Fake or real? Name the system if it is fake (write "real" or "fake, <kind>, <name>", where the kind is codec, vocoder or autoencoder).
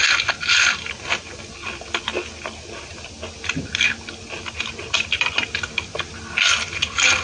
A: real